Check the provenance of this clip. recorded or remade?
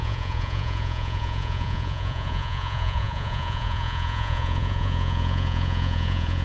remade